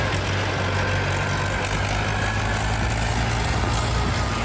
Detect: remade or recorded recorded